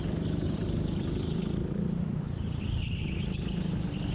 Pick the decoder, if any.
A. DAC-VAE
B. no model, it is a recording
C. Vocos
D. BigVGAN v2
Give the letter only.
D